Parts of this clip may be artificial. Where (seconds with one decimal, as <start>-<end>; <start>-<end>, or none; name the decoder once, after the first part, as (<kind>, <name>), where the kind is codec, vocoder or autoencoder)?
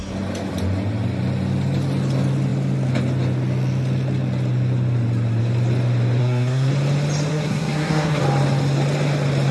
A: 6.2-6.7 (codec, SNAC); 7.3-8.2